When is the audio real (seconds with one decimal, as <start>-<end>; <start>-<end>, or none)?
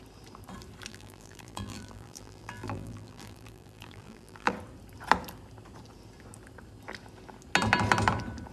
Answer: 0.0-0.9; 4.5-8.5